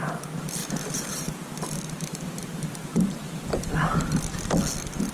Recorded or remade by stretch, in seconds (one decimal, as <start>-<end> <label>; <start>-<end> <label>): 0.0-0.6 recorded; 0.6-3.7 remade; 3.7-5.1 recorded